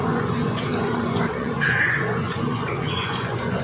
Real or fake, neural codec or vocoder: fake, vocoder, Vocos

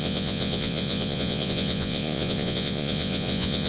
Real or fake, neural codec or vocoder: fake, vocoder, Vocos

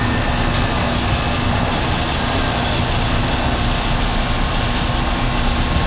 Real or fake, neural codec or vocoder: real